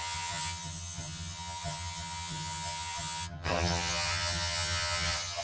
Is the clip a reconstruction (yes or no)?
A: yes